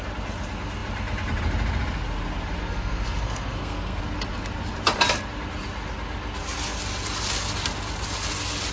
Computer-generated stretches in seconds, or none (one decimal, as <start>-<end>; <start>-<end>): 2.6-4.0